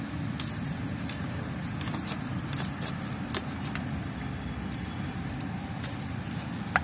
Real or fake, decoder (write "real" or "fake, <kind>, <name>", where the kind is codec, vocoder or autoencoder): fake, vocoder, BigVGAN v2